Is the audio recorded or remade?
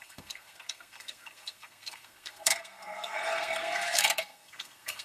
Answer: remade